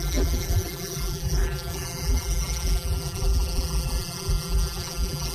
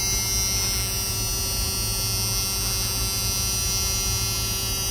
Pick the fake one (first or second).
first